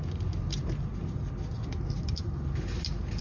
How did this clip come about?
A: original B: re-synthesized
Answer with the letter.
A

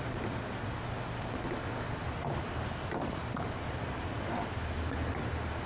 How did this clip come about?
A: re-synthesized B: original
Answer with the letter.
B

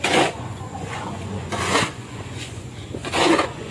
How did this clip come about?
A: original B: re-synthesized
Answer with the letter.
B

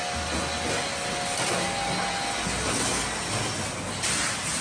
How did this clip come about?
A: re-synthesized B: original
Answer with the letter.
B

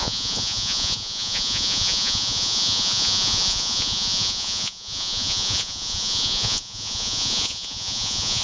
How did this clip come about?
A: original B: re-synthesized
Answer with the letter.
B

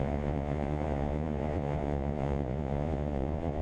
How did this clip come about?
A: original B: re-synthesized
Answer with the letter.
B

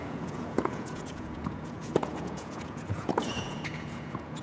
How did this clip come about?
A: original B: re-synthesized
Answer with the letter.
B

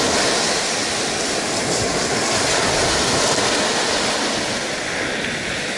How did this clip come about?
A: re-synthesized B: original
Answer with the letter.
B